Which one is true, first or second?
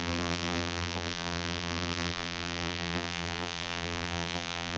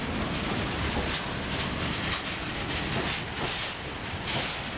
second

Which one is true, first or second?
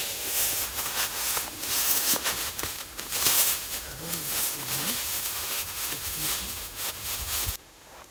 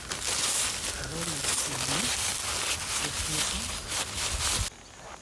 second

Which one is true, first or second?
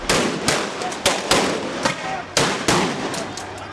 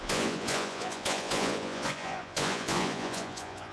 first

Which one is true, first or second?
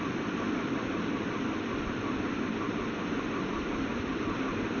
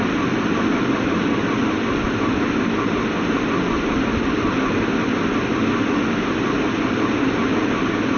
second